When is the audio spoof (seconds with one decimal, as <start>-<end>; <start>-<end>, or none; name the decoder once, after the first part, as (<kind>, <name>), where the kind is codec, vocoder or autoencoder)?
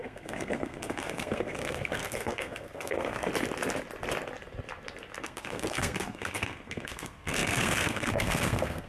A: 0.0-3.3 (codec, SNAC); 5.2-8.9